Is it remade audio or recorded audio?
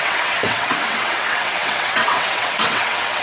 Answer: remade